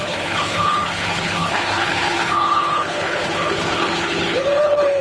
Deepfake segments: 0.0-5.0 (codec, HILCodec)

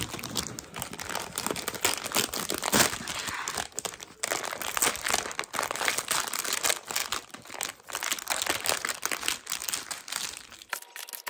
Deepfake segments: none